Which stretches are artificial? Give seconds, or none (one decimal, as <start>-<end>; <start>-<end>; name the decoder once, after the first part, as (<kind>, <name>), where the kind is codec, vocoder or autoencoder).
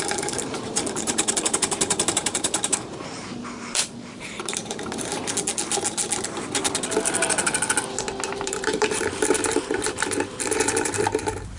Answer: 0.0-5.1 (vocoder, BigVGAN v2); 8.3-11.6